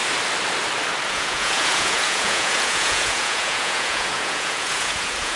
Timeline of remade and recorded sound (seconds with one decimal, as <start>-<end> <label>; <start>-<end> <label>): 0.0-1.1 recorded; 1.1-5.4 remade